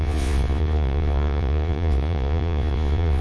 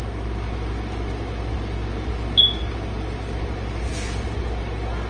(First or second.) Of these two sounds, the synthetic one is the first